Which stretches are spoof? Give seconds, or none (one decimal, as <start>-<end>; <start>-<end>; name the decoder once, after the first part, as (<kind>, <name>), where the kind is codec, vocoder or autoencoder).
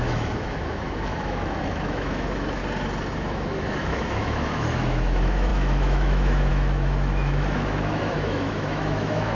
0.0-2.6 (autoencoder, DAC-VAE); 3.1-9.3